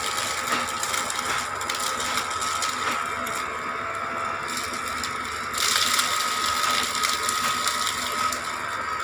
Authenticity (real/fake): real